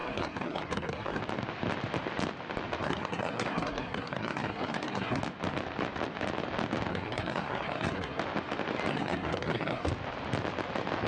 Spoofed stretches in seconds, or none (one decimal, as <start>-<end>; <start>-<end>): 0.0-1.2; 2.8-5.2; 6.9-8.2; 8.9-9.9